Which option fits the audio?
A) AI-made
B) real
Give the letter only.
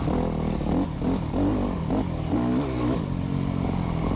B